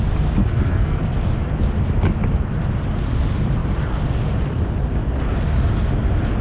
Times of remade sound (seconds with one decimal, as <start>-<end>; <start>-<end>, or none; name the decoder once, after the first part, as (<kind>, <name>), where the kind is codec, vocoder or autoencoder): 0.4-1.0 (codec, SNAC)